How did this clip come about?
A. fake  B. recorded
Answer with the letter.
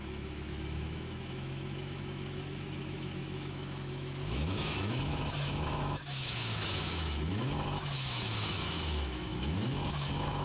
A